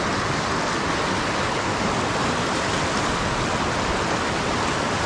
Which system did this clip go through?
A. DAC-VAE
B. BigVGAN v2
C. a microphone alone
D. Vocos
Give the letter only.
C